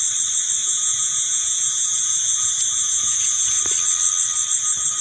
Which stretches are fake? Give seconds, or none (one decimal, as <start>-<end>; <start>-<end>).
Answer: 0.6-3.6